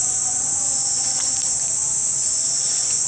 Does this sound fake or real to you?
fake